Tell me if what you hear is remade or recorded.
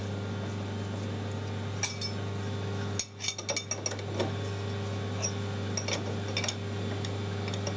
recorded